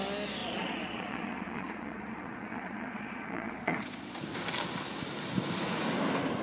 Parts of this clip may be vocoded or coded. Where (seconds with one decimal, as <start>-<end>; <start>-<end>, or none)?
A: 0.4-4.2